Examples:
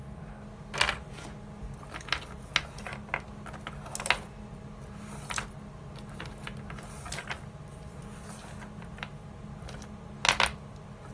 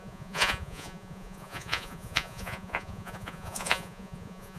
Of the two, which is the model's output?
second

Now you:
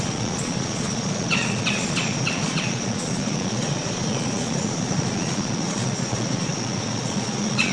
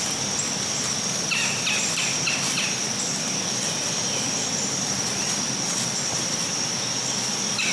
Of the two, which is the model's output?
first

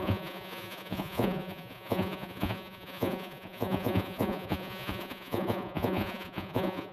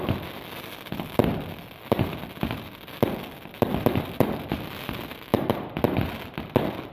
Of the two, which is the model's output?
first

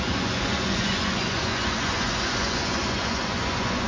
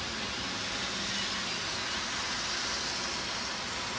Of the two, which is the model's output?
first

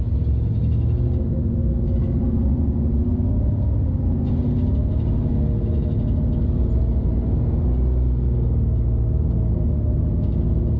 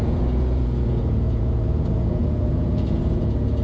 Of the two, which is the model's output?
second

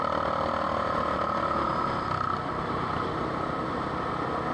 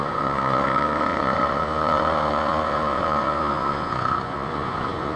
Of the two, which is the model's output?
second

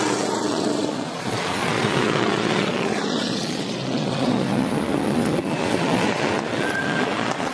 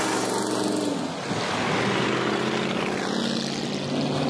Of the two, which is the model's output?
first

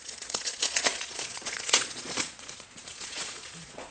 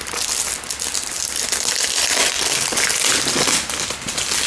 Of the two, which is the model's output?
first